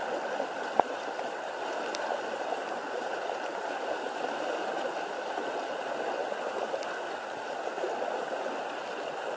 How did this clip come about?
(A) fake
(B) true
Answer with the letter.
B